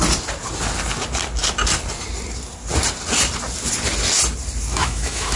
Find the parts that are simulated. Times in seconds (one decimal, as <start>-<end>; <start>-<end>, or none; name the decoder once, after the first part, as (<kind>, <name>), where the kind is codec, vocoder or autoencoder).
4.7-5.4 (autoencoder, DAC-VAE)